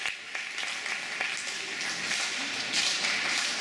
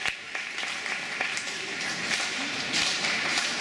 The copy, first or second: second